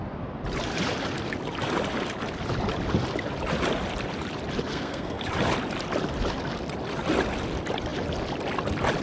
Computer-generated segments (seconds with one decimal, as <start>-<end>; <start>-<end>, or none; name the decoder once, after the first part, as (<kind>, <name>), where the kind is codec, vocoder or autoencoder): 4.7-5.2 (codec, SNAC)